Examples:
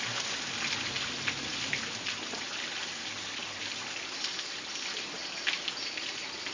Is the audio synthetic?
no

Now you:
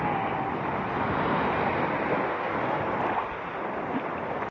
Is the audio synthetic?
no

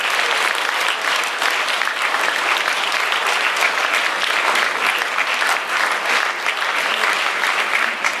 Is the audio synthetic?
no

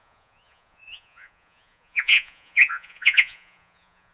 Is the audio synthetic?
yes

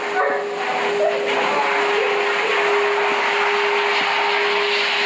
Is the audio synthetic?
no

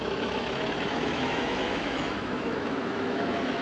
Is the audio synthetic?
yes